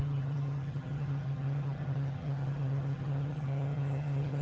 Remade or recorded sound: remade